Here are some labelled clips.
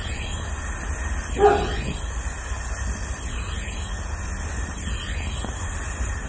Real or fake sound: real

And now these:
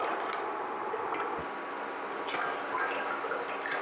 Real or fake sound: real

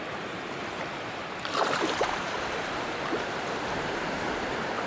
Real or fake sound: fake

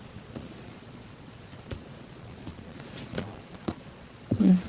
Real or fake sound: fake